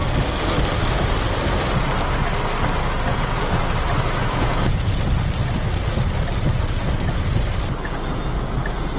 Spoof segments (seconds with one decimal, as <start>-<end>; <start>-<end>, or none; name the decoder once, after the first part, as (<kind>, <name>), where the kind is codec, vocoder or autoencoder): 3.1-3.6 (vocoder, Vocos); 4.2-4.9